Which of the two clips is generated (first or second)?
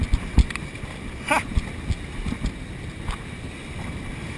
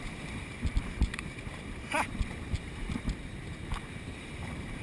second